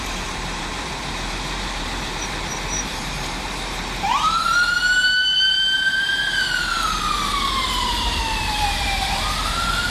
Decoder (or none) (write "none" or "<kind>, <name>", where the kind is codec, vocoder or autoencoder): vocoder, BigVGAN v2